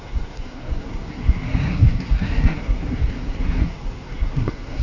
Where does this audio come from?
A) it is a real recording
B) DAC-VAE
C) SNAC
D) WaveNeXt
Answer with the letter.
C